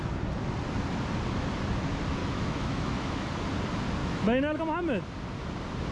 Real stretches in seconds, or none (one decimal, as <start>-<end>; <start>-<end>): 0.0-2.2; 3.3-4.0; 4.6-5.9